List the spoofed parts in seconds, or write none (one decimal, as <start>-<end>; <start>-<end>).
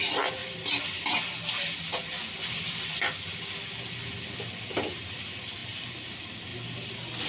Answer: none